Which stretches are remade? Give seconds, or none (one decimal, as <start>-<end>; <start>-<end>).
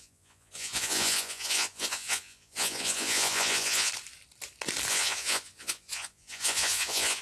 0.0-3.9; 4.9-7.2